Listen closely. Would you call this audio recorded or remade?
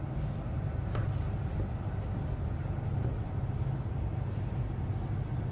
recorded